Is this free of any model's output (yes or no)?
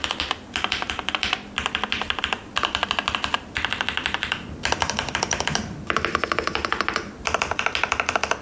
no